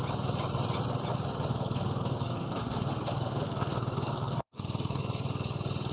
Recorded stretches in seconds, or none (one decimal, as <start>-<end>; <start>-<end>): 0.0-1.5; 5.0-5.9